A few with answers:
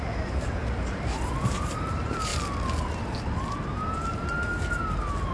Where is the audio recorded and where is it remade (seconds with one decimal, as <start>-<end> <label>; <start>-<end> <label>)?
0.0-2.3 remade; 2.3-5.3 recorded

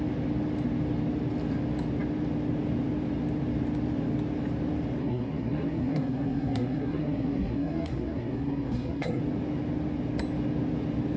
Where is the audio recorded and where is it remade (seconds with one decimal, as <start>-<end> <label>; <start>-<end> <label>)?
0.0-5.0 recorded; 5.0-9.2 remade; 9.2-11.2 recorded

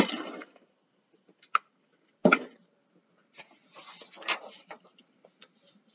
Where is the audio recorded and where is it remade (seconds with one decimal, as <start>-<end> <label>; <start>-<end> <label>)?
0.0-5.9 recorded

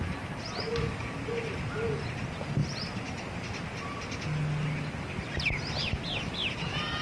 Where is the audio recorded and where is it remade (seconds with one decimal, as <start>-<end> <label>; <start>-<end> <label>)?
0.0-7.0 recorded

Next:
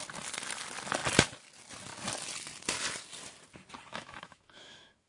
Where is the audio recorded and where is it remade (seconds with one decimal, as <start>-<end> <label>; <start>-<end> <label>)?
0.0-3.9 recorded; 3.9-5.1 remade

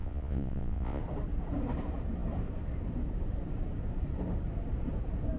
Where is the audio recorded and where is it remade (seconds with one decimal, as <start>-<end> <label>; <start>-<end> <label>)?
0.0-1.0 remade; 1.0-5.4 recorded